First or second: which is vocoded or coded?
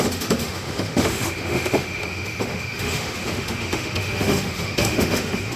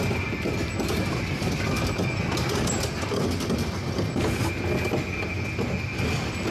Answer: first